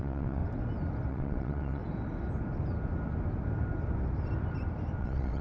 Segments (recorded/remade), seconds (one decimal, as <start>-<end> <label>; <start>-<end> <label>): 0.0-0.4 remade; 0.4-1.1 recorded; 1.1-1.8 remade; 1.8-5.0 recorded; 5.0-5.4 remade